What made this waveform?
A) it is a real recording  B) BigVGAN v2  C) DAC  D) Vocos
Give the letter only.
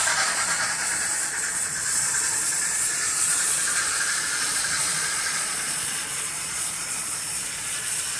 D